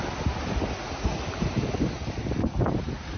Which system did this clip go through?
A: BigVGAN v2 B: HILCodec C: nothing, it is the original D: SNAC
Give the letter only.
C